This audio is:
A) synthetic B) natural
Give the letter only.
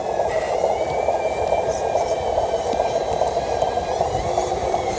A